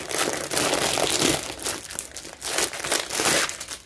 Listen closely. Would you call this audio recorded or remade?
recorded